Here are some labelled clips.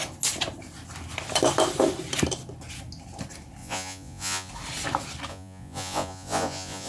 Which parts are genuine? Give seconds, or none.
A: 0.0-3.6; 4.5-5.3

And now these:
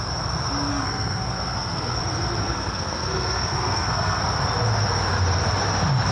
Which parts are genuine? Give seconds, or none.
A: 0.0-0.7; 2.0-2.4; 4.2-6.1